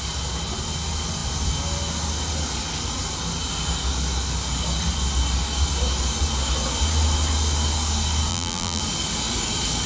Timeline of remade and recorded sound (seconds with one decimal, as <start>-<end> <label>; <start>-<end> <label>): 0.0-8.3 recorded; 8.3-8.8 remade; 8.8-9.9 recorded